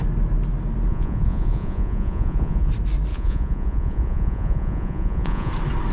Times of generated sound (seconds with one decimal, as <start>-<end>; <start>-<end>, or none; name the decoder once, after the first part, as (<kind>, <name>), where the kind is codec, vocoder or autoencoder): 0.9-2.7 (vocoder, Vocos); 3.1-5.5